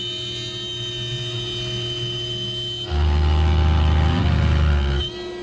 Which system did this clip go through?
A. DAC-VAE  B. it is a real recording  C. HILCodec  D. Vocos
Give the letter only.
B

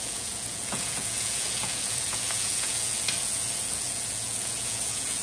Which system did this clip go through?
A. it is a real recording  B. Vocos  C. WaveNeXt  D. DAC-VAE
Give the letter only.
B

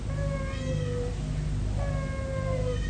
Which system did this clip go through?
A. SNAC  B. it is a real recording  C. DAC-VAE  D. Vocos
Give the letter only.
B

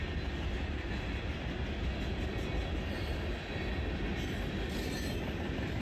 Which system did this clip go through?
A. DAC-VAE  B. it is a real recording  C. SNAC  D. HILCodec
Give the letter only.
B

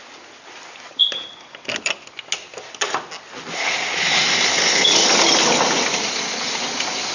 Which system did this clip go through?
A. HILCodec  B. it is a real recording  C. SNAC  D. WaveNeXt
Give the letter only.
B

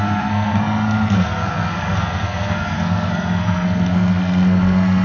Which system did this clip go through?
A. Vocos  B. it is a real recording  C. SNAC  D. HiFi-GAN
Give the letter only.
C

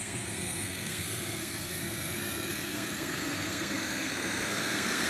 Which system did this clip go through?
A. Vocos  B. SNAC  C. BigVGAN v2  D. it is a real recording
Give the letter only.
B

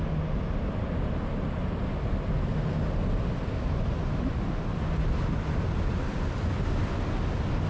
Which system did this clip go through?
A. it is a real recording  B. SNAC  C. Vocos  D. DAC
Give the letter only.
A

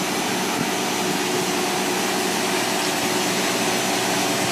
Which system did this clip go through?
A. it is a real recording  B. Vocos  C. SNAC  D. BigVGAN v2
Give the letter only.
A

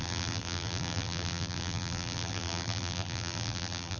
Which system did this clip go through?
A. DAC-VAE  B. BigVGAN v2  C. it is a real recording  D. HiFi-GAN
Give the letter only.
B